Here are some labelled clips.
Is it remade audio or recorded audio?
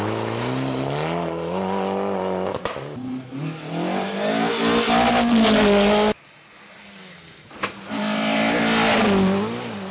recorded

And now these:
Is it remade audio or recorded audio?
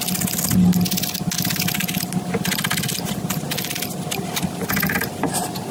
recorded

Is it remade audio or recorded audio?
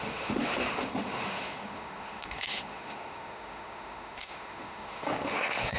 remade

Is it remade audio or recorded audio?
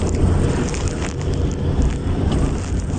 recorded